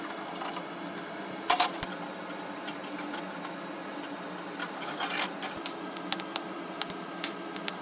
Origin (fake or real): real